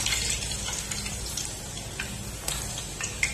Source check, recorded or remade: recorded